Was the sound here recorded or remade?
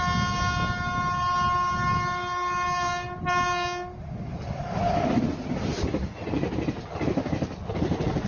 recorded